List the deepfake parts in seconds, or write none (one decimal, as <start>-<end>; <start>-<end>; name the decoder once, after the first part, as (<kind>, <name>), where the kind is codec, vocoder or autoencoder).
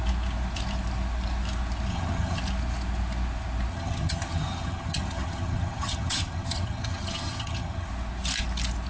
1.9-2.4 (vocoder, HiFi-GAN); 3.7-7.9